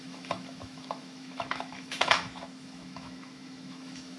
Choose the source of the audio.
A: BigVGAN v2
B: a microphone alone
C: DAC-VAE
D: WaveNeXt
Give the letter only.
C